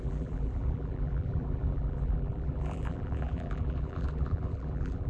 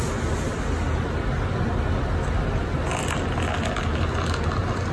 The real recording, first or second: second